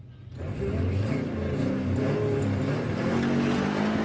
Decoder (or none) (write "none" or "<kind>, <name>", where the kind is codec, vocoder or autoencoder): none